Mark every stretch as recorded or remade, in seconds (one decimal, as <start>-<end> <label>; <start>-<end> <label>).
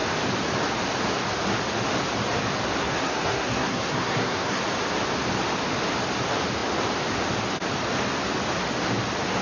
0.0-2.8 recorded; 2.8-4.6 remade; 4.6-9.4 recorded